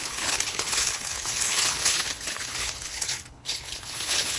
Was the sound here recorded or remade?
remade